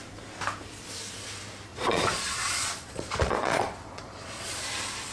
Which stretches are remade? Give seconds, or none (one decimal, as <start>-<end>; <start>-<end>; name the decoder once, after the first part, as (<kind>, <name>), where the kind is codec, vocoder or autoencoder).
1.7-4.6 (vocoder, Vocos)